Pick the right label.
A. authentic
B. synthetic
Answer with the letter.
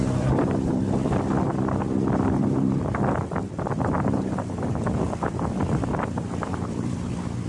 B